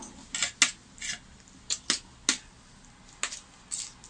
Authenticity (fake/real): real